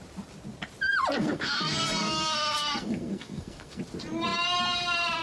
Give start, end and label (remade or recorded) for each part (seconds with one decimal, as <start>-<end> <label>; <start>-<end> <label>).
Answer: 0.0-1.2 recorded; 1.2-3.8 remade; 3.8-5.2 recorded